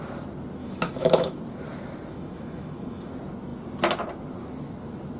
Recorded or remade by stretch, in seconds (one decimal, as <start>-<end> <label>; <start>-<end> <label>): 0.0-0.6 recorded; 0.6-1.4 remade; 1.4-2.1 recorded; 2.1-3.1 remade; 3.1-5.2 recorded